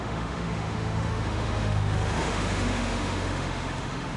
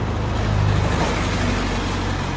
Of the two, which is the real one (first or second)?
second